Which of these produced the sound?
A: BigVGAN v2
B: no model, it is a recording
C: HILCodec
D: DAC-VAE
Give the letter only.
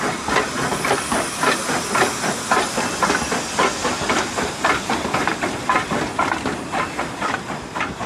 B